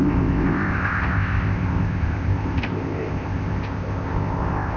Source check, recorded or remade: remade